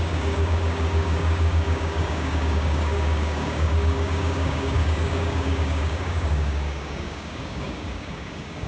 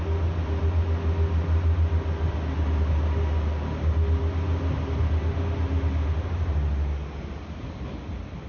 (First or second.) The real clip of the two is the second